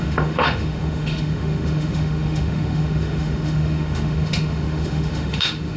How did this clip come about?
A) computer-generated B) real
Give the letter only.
A